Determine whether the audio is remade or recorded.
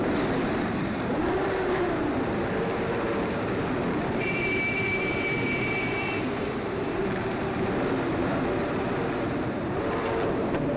remade